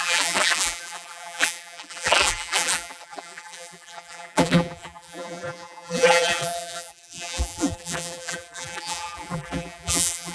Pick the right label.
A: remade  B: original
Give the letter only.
A